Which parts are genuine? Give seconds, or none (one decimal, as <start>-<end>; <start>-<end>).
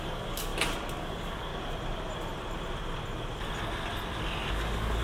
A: 0.5-1.0; 1.5-4.5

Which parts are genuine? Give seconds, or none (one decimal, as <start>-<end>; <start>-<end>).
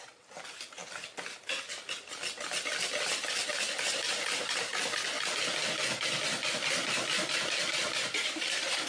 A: 0.8-3.5; 4.7-7.9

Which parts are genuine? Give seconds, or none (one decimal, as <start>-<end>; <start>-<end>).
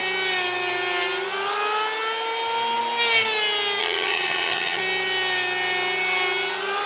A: 0.0-3.8; 4.8-6.9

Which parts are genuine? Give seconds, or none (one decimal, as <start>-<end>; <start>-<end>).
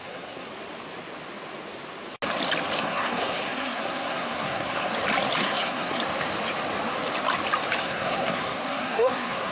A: 0.5-2.8; 4.9-5.4; 6.0-7.8